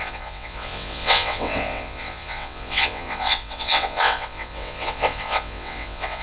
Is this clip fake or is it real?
fake